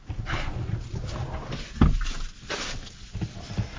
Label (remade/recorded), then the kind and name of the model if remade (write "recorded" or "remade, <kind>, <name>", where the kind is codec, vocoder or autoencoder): recorded